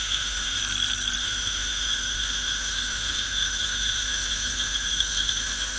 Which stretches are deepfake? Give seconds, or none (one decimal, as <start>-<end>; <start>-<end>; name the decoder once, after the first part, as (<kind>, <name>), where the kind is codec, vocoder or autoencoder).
0.0-0.6 (autoencoder, DAC-VAE); 1.2-5.8